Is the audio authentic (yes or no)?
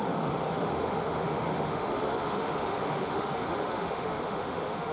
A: no